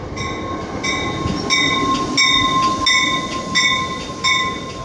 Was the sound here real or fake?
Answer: real